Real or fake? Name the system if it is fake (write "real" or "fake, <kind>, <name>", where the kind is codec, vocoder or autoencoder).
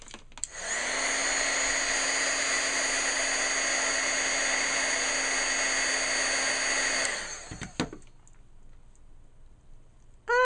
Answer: real